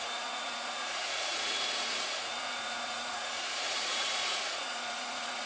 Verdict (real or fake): fake